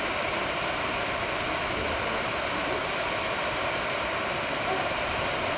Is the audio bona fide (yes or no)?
yes